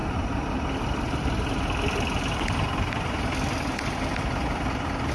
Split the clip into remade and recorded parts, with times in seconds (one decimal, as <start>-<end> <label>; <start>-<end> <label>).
0.0-5.1 recorded